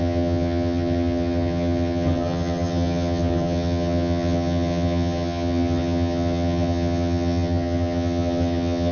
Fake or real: fake